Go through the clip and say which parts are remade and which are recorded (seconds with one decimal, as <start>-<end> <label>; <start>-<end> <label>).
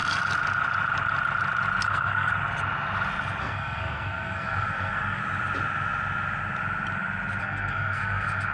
0.0-1.8 recorded; 1.8-2.3 remade; 2.3-3.4 recorded; 3.4-5.2 remade; 5.2-7.4 recorded; 7.4-8.5 remade